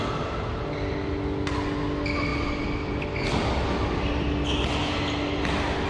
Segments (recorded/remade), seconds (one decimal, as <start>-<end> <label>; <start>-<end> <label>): 0.0-5.9 recorded